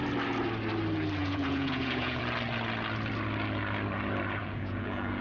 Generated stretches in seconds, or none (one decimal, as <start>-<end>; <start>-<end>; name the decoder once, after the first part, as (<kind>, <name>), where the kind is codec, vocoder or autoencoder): 1.2-2.2 (vocoder, Vocos); 4.4-5.2